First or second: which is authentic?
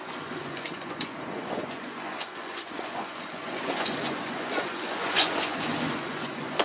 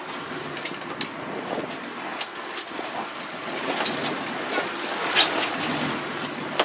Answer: second